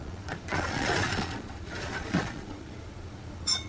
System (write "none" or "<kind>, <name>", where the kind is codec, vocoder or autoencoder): vocoder, Vocos